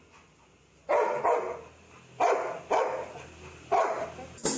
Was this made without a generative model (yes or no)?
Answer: yes